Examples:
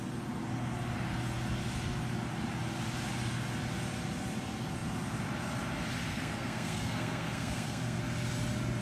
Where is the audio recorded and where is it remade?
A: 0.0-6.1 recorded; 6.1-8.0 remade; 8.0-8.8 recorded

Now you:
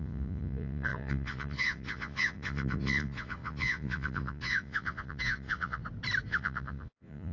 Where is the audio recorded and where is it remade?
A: 0.0-5.8 remade; 5.8-6.3 recorded; 6.3-7.3 remade

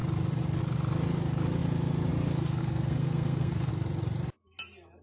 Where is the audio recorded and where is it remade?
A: 0.0-2.6 recorded; 2.6-3.7 remade; 3.7-5.0 recorded

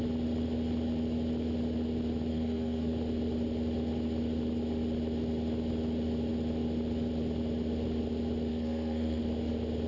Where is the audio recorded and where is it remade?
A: 0.0-2.3 recorded; 2.3-2.9 remade; 2.9-8.5 recorded; 8.5-9.2 remade; 9.2-9.9 recorded

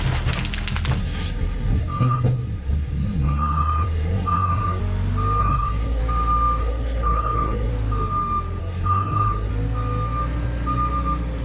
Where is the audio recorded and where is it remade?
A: 0.0-1.0 recorded; 1.0-4.8 remade; 4.8-5.4 recorded; 5.4-6.0 remade; 6.0-6.6 recorded; 6.6-7.7 remade; 7.7-8.6 recorded; 8.6-9.5 remade; 9.5-11.4 recorded

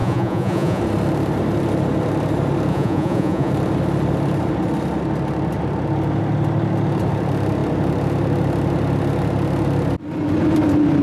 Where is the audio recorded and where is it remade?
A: 0.0-0.8 remade; 0.8-2.7 recorded; 2.7-3.5 remade; 3.5-11.0 recorded

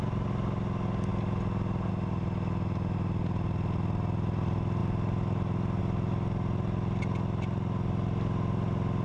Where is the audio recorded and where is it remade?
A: 0.0-9.0 recorded

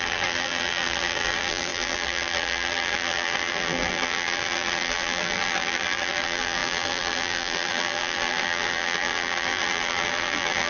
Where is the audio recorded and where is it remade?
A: 0.0-10.7 remade